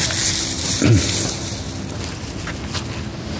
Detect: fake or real real